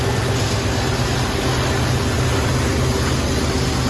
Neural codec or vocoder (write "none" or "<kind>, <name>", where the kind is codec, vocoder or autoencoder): none